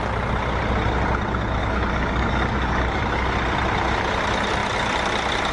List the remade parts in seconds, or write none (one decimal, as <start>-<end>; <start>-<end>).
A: 1.6-3.0